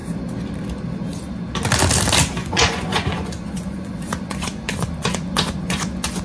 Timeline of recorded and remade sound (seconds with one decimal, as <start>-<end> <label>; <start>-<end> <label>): 0.0-2.4 recorded; 2.4-6.2 remade